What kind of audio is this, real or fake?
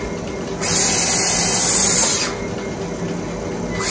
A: real